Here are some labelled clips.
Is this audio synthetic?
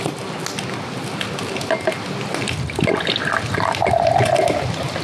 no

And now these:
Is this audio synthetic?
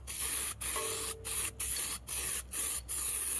no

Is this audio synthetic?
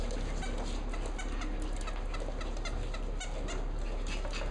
no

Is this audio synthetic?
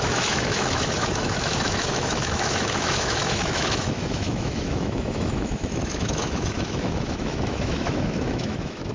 yes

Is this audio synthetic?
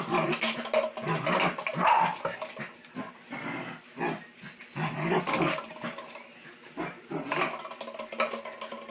no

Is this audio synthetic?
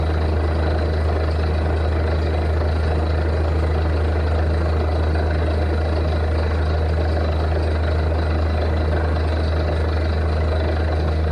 no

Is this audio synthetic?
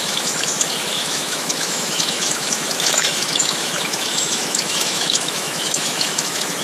yes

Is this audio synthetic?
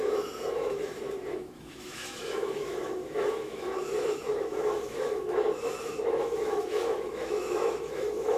yes